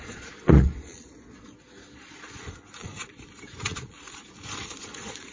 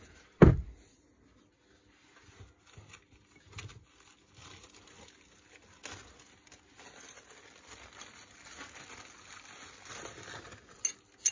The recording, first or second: second